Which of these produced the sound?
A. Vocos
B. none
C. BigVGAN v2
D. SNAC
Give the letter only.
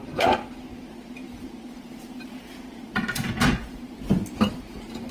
C